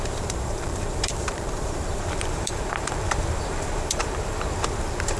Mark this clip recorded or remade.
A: remade